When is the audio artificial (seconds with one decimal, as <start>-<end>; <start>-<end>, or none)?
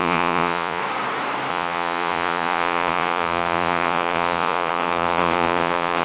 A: 0.0-0.8; 1.5-6.0